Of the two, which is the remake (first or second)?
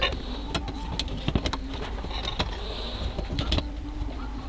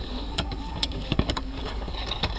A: second